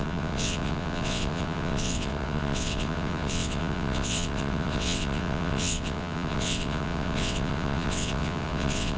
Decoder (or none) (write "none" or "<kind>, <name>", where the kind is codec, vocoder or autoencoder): vocoder, WaveNeXt